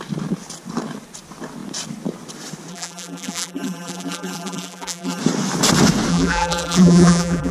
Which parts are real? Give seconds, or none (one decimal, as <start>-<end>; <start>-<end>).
0.0-2.7; 5.2-6.1